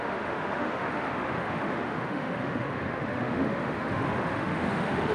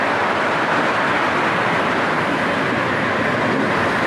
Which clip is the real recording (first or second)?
second